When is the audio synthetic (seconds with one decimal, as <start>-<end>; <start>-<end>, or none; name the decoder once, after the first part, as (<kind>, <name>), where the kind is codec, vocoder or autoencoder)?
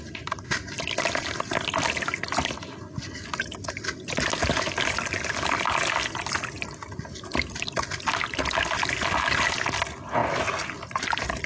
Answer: none